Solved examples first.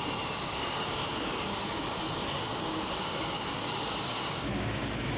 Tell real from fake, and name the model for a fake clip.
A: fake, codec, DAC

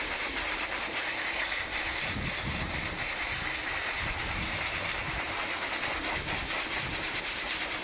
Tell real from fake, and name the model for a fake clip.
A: fake, vocoder, BigVGAN v2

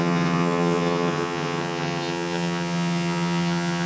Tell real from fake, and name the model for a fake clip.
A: fake, vocoder, HiFi-GAN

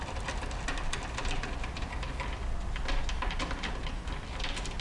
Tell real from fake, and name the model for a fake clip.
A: real